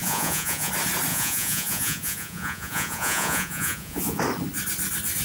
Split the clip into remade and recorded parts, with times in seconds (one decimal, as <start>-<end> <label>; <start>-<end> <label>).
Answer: 0.0-0.7 remade; 0.7-1.1 recorded; 1.1-4.2 remade; 4.2-5.2 recorded